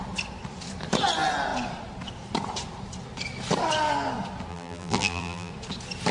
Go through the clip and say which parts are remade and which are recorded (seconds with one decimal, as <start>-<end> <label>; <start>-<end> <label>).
0.0-4.5 recorded; 4.5-5.5 remade; 5.5-6.1 recorded